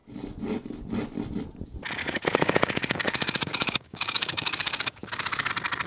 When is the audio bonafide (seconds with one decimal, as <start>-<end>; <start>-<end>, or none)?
0.0-2.0; 5.5-5.9